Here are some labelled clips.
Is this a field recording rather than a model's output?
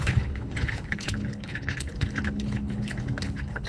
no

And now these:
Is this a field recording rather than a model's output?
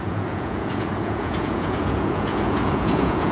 no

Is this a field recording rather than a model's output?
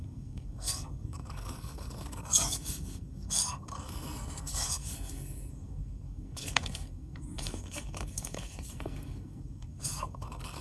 no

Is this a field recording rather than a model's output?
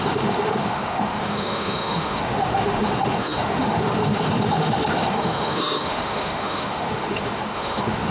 no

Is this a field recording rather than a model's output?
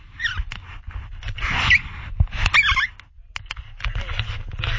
yes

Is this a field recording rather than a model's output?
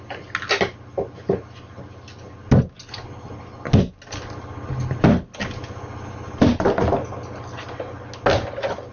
yes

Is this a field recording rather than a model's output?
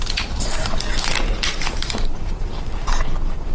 no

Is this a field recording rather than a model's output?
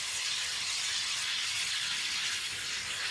yes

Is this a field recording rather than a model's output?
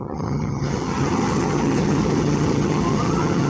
no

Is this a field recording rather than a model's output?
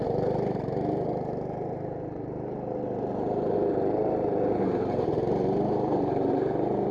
no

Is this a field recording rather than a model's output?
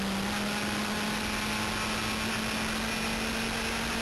yes